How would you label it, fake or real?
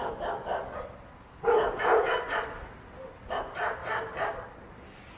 real